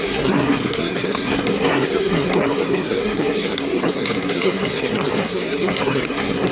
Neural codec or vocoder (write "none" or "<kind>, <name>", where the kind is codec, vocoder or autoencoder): codec, SNAC